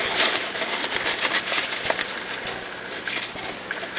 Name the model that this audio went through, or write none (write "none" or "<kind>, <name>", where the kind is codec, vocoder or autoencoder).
none